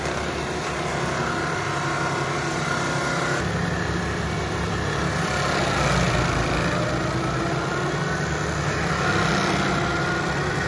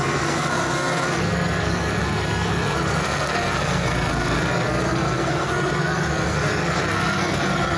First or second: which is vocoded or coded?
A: second